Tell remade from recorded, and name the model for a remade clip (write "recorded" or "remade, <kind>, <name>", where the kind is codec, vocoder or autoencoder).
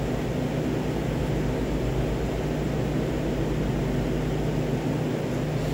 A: recorded